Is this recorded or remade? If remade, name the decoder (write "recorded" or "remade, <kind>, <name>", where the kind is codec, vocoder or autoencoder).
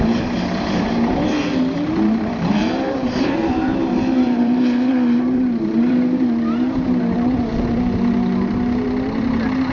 remade, vocoder, BigVGAN v2